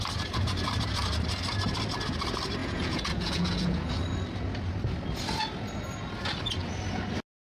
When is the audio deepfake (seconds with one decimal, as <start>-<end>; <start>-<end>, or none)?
2.6-3.9